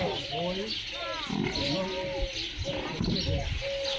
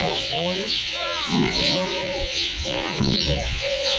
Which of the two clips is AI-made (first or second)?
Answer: second